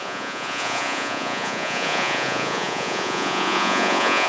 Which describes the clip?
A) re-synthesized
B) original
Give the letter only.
A